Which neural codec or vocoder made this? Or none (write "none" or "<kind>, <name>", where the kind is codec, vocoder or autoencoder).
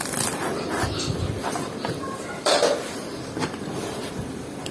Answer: vocoder, BigVGAN v2